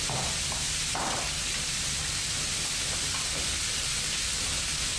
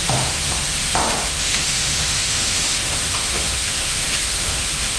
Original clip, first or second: first